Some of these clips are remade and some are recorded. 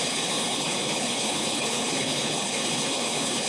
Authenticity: remade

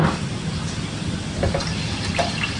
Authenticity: recorded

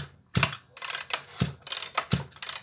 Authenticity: recorded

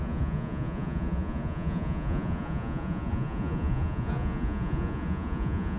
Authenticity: remade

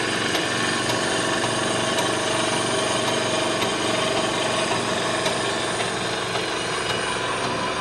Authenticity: recorded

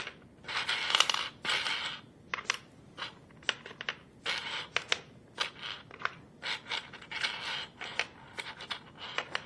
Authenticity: recorded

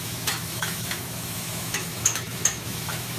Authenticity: remade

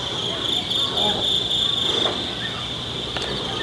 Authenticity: recorded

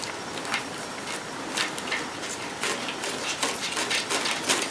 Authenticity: recorded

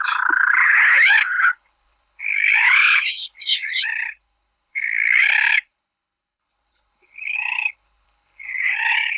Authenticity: remade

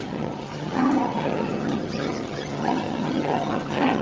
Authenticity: remade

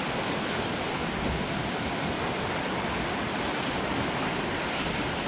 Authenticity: recorded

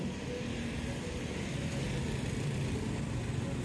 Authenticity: recorded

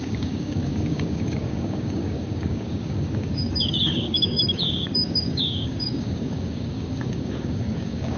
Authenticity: remade